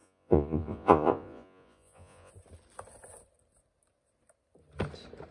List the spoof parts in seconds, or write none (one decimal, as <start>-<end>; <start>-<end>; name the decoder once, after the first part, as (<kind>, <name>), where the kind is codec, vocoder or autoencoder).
0.0-2.3 (vocoder, Vocos)